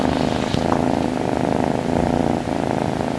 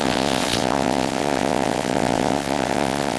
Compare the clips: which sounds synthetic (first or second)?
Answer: second